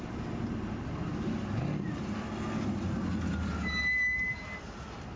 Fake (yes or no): no